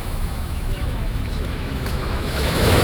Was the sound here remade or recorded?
remade